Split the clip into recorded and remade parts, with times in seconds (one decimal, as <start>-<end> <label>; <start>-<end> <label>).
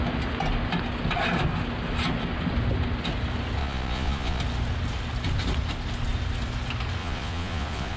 0.0-3.6 recorded; 3.6-4.4 remade; 4.4-7.0 recorded; 7.0-8.0 remade